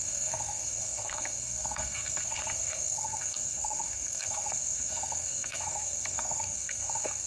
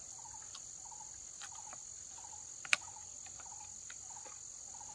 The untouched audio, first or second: second